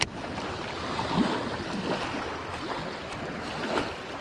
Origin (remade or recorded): recorded